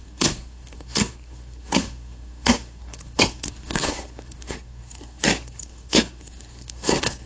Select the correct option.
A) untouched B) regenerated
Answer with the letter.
B